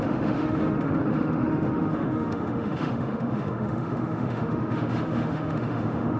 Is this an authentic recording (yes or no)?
no